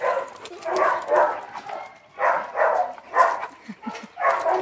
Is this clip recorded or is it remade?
recorded